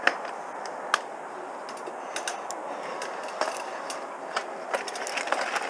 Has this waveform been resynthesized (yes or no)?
no